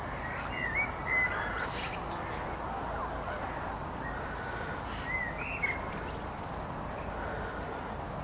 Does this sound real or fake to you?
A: real